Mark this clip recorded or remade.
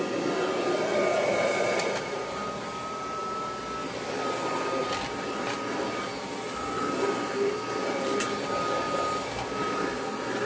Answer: recorded